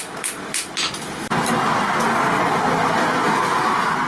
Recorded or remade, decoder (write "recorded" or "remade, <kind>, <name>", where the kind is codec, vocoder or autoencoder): recorded